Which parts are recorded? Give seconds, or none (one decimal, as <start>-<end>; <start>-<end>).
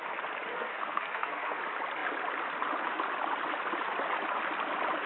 0.0-0.5; 1.6-5.1